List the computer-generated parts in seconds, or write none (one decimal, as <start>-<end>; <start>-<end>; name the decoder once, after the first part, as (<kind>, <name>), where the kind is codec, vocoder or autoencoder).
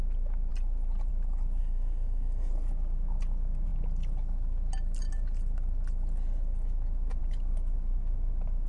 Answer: 1.6-2.5 (codec, SNAC)